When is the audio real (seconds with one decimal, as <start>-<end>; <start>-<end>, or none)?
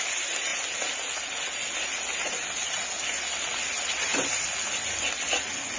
0.0-5.8